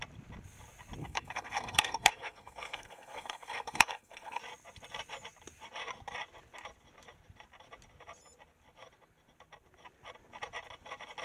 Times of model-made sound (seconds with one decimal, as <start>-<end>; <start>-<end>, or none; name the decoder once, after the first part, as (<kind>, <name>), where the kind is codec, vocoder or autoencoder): 1.0-4.4 (codec, SNAC)